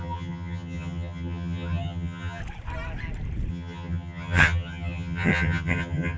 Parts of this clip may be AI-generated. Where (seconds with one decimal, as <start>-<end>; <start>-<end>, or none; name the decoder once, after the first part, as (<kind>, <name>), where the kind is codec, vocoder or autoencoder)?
0.0-2.4 (vocoder, HiFi-GAN); 3.5-6.2